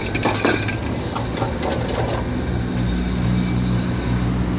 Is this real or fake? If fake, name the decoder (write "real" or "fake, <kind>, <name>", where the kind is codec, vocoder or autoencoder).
real